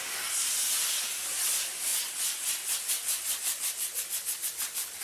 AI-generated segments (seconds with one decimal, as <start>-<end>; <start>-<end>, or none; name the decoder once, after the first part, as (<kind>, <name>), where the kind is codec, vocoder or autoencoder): none